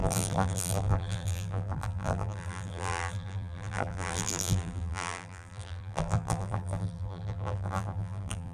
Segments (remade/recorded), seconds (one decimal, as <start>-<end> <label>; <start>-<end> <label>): 0.0-8.5 remade